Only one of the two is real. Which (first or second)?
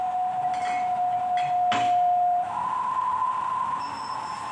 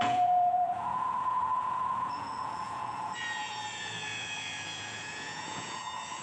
first